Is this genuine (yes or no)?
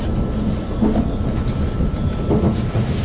yes